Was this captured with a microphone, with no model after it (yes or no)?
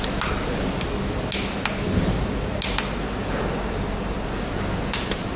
yes